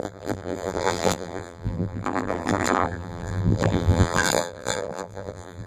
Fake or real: fake